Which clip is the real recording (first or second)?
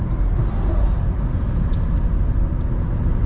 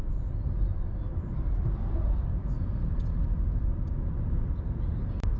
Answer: first